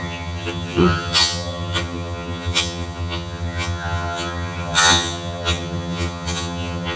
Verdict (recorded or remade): remade